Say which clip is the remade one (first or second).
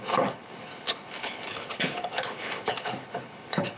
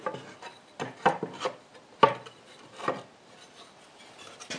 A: first